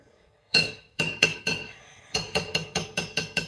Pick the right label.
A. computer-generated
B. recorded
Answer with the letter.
A